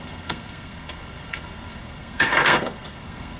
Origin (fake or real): fake